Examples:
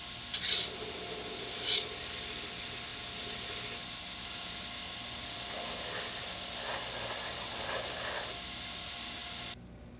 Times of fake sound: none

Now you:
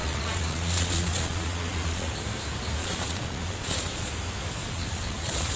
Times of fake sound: 0.0-2.1 (vocoder, Vocos); 2.8-4.1; 4.6-5.6

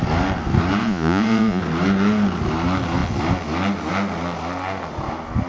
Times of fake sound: 0.8-1.6 (vocoder, Vocos)

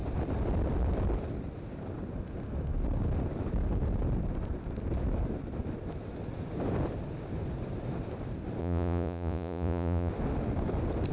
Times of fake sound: 8.6-10.1 (vocoder, Vocos)